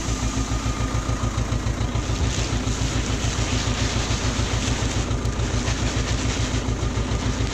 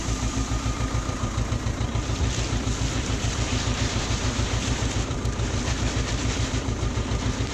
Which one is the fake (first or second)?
second